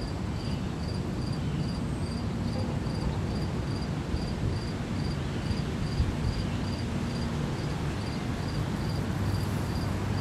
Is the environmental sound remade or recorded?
recorded